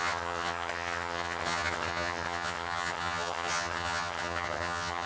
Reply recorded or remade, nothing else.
remade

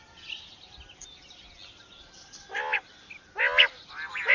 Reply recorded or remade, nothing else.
recorded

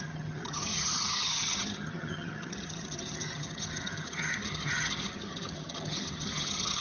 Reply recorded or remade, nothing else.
remade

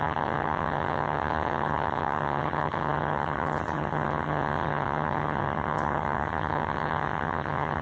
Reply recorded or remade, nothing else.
remade